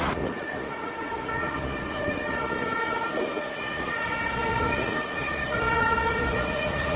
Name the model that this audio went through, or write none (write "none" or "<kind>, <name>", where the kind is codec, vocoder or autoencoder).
vocoder, Vocos